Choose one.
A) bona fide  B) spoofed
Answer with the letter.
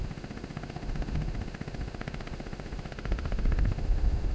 B